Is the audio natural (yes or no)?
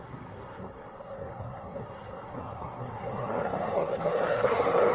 no